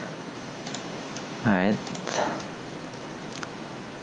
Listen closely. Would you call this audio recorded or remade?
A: remade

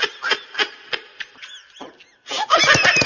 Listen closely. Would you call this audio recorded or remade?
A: recorded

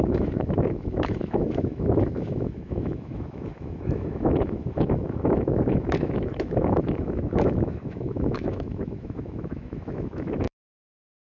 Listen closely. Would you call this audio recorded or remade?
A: remade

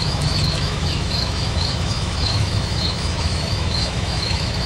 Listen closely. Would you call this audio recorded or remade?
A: remade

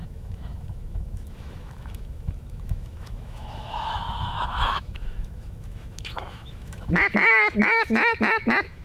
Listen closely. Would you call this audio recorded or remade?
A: remade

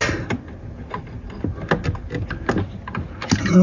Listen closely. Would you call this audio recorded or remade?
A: recorded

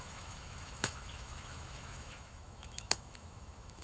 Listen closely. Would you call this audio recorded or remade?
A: remade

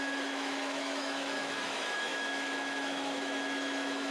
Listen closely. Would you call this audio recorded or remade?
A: remade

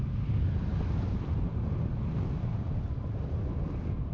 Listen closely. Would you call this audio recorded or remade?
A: recorded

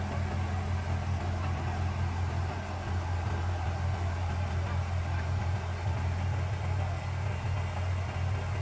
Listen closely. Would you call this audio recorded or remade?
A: recorded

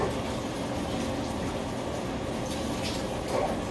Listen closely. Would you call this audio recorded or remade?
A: recorded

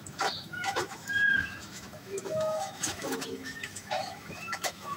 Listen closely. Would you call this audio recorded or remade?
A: remade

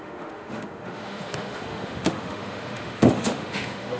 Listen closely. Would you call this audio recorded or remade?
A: remade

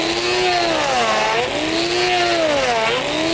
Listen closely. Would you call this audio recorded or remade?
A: recorded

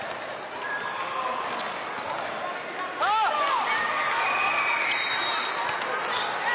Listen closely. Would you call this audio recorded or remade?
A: recorded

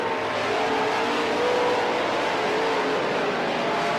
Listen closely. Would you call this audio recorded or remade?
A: recorded